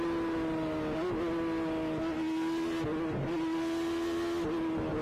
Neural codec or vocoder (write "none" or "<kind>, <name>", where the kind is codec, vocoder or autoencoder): none